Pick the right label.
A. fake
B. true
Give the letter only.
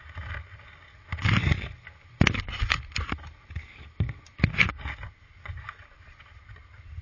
B